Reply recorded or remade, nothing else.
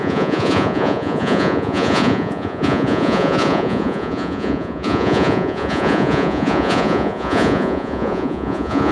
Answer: remade